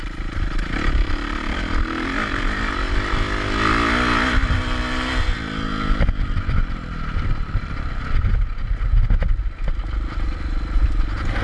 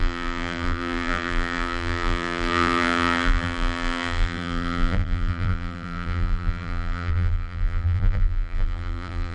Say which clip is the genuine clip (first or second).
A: first